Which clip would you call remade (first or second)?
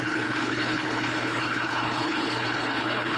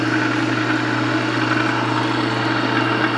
first